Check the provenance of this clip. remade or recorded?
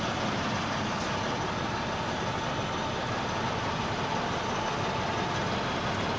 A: recorded